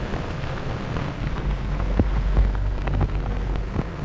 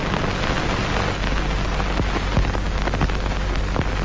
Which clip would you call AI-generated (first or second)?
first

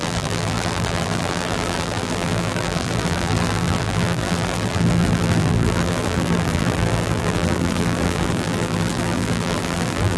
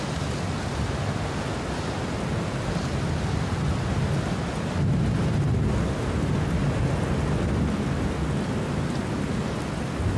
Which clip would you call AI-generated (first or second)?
first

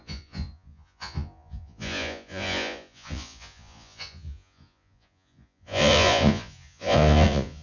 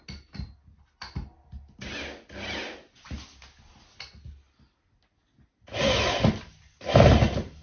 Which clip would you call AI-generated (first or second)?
first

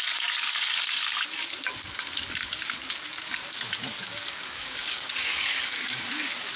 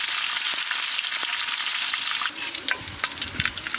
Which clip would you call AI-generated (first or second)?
first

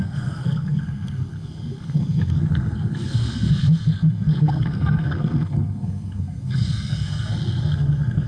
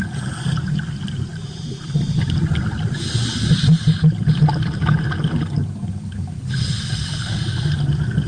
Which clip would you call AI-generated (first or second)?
first